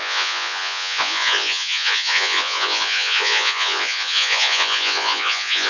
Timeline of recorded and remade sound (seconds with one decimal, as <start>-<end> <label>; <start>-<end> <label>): 0.0-5.7 remade